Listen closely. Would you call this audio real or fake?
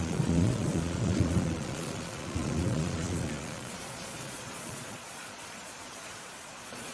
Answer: fake